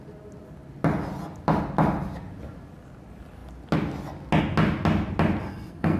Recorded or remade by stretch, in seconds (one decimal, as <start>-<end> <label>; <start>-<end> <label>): 0.0-5.5 recorded; 5.5-6.0 remade